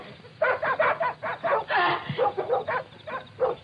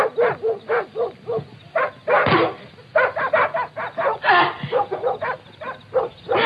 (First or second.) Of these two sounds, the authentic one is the second